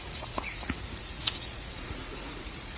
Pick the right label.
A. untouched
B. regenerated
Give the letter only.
B